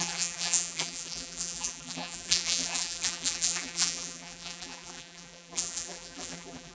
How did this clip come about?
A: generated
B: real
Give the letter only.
A